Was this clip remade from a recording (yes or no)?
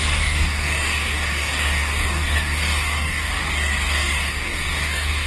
yes